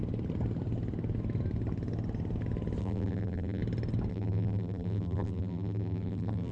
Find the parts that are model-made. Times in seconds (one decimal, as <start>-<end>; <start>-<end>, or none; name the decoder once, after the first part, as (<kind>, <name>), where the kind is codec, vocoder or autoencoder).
2.8-3.6 (vocoder, BigVGAN v2); 4.1-6.5